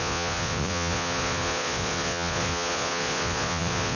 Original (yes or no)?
no